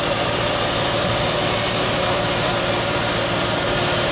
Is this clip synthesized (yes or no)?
no